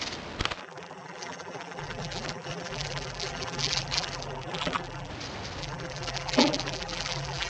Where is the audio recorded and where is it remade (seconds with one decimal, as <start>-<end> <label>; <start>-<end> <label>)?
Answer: 0.0-0.6 recorded; 0.6-5.1 remade; 5.1-5.6 recorded; 5.6-7.5 remade